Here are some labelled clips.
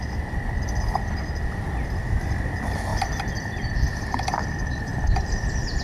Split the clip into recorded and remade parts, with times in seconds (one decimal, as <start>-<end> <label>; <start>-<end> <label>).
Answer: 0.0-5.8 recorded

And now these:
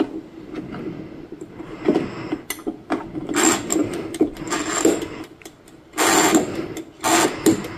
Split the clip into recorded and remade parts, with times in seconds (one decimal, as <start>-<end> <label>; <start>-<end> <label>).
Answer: 0.0-7.8 recorded

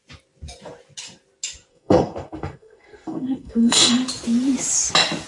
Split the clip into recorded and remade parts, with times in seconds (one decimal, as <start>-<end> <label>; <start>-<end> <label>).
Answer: 0.0-1.7 recorded; 1.7-3.9 remade; 3.9-5.3 recorded